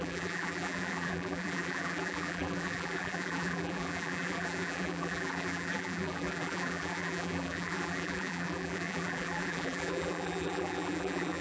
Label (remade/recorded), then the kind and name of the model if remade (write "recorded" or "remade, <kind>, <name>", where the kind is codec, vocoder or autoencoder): remade, vocoder, BigVGAN v2